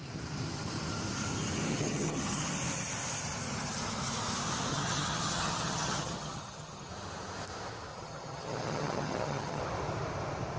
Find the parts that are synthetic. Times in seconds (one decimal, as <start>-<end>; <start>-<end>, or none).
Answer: 1.7-2.5; 4.7-6.9; 7.9-9.6

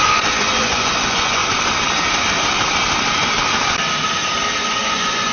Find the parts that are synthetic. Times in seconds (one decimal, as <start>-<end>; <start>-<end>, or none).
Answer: 0.0-1.4; 4.6-5.3

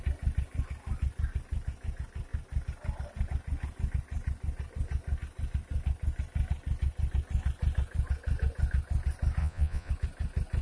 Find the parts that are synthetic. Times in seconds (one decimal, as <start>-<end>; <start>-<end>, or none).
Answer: 9.4-9.9

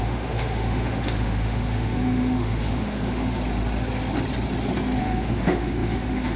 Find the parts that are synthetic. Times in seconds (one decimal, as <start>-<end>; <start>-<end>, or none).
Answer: 0.0-3.4; 5.0-6.4

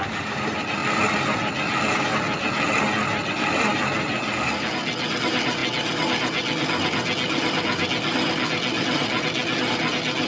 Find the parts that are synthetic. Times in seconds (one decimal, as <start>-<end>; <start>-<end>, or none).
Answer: none

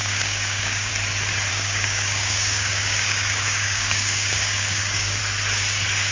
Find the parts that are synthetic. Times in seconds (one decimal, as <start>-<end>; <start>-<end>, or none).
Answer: 0.0-0.9; 1.5-5.2